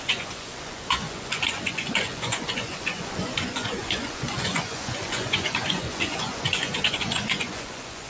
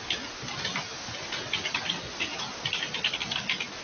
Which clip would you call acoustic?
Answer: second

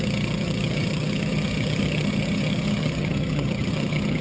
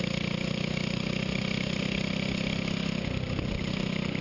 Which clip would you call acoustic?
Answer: second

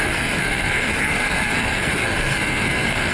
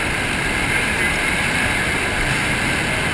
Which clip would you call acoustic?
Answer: second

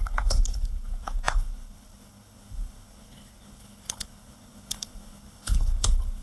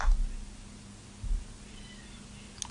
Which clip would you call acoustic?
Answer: second